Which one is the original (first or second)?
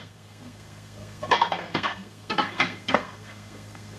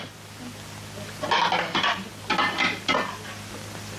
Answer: second